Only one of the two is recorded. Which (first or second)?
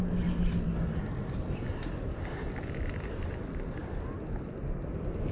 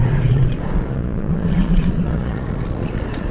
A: first